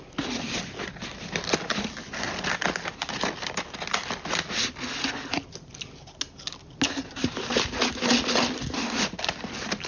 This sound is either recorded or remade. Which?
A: recorded